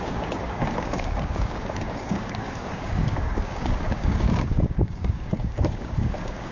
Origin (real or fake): fake